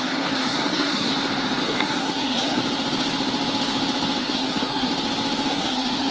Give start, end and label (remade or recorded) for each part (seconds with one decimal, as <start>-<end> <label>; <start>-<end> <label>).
0.0-1.1 remade; 1.1-1.6 recorded; 1.6-2.6 remade; 2.6-4.2 recorded; 4.2-4.9 remade; 4.9-5.5 recorded; 5.5-6.1 remade